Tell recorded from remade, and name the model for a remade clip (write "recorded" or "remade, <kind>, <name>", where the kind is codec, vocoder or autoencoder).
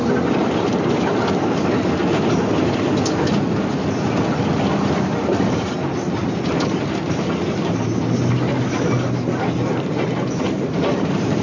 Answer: recorded